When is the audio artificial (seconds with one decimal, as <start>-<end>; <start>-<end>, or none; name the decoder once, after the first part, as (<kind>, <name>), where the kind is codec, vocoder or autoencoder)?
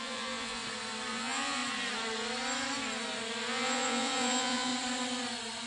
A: 0.0-0.6 (vocoder, Vocos); 1.1-1.6; 3.5-4.7